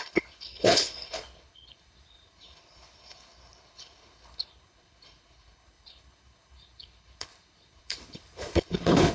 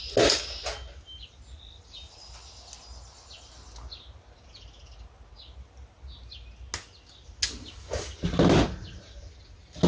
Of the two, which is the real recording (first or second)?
second